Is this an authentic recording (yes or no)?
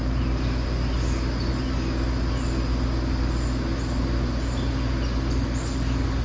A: yes